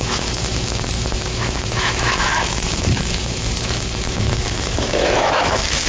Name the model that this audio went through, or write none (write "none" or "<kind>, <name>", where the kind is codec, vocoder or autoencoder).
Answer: autoencoder, DAC-VAE